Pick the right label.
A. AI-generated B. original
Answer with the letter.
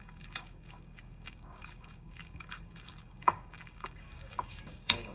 A